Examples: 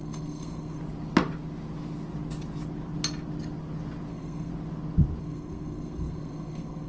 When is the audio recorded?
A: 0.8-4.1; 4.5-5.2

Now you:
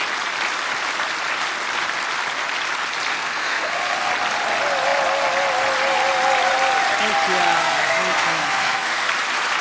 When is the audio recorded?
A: 0.0-3.1; 4.1-7.6; 9.1-9.6

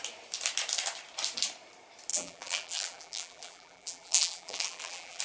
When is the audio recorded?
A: 0.0-2.1

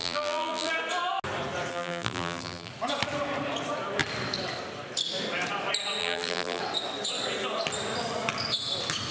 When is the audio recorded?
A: 0.7-1.7; 2.7-6.0; 6.6-9.1

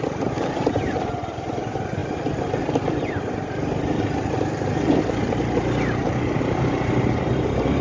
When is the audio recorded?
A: 2.0-3.0

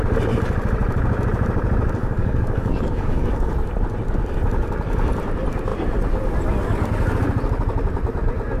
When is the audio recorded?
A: 0.0-2.0; 3.5-8.6

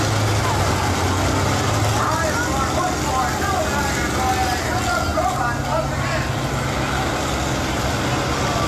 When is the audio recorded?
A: 0.0-8.7